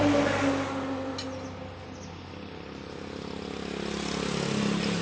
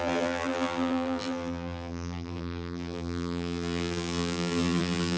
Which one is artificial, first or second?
second